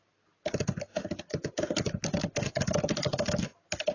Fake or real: real